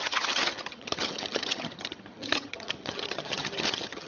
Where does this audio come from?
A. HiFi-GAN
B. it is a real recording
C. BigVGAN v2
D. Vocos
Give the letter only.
A